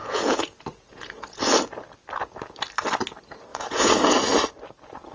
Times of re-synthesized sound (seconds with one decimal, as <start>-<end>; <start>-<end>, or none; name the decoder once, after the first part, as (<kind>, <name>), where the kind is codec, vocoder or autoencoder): 0.0-1.4 (vocoder, Vocos); 3.5-4.1